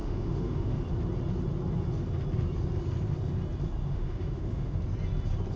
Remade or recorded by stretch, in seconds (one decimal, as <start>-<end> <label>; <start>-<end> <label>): 0.0-0.8 remade; 0.8-3.8 recorded; 3.8-4.8 remade; 4.8-5.6 recorded